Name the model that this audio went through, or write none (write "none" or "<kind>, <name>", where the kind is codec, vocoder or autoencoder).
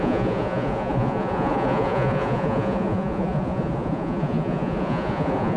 vocoder, Vocos